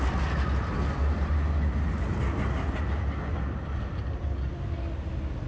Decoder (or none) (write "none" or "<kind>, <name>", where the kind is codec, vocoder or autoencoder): none